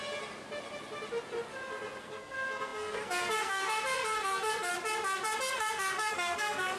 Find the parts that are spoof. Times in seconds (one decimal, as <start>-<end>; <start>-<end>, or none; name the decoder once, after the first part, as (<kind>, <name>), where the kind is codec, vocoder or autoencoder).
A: 2.0-4.7 (codec, SNAC); 5.4-6.8